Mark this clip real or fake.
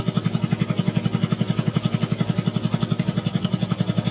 real